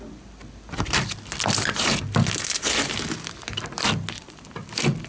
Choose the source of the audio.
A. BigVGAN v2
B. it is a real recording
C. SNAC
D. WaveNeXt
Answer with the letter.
B